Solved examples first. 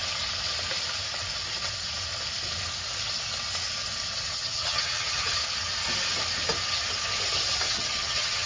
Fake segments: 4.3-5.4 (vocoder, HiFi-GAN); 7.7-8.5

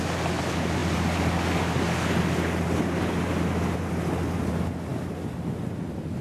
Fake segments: none

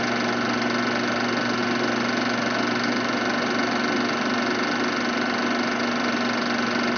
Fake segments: none

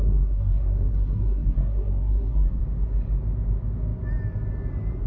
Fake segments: 0.0-2.6 (codec, SNAC)

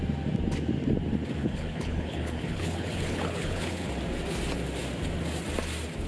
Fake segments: 1.4-3.9 (codec, HILCodec)

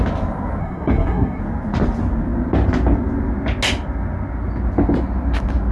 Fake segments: 0.6-1.4 (codec, SNAC)

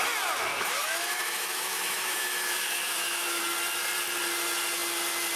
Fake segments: 0.5-3.4 (autoencoder, DAC-VAE)